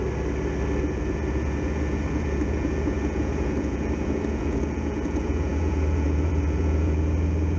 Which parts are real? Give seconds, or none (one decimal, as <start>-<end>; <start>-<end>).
0.0-0.8